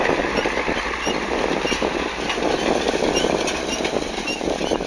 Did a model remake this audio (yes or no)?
no